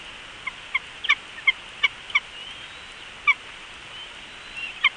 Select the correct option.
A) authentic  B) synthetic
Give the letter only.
A